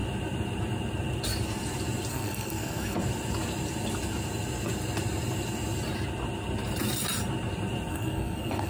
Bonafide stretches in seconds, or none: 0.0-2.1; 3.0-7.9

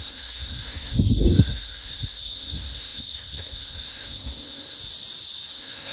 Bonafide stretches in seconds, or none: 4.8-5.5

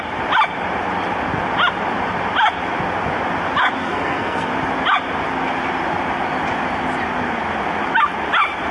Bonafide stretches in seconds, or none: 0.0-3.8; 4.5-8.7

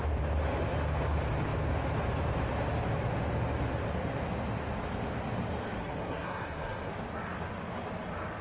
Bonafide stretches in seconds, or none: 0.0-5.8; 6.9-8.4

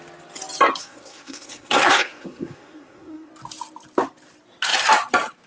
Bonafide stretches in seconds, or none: 0.0-0.8; 3.3-5.5

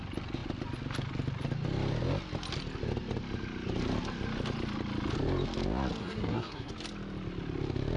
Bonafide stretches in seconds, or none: 0.0-6.0; 6.7-8.0

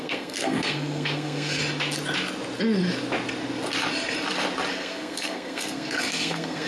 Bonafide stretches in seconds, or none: 1.6-4.7